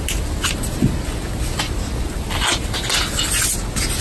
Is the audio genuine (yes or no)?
yes